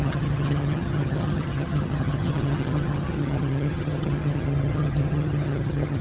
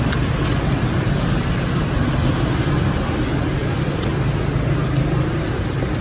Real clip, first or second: second